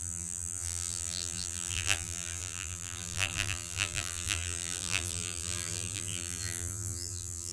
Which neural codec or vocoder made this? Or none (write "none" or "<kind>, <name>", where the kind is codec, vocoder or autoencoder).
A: vocoder, BigVGAN v2